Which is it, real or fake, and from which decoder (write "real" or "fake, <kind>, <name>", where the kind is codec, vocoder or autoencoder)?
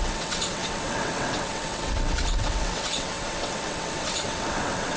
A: fake, vocoder, WaveNeXt